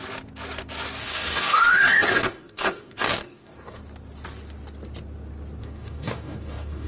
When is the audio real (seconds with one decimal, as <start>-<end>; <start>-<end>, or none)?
0.0-1.0; 3.8-5.6